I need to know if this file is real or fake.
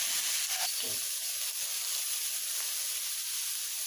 fake